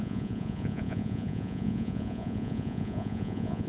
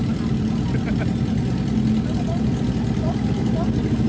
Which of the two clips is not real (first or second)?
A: first